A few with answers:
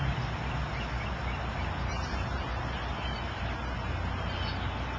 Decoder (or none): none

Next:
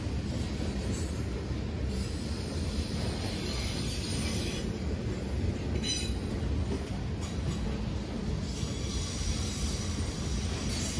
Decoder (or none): none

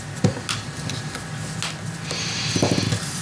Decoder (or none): none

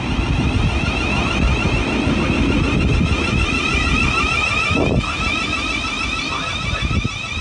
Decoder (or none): none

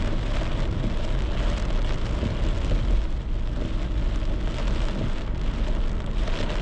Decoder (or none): none